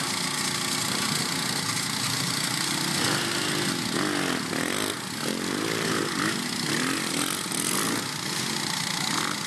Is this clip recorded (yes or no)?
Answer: yes